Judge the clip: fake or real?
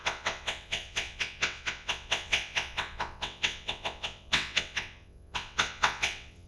fake